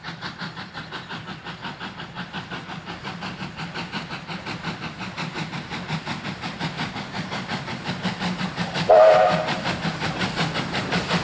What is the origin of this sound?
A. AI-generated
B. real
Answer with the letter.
B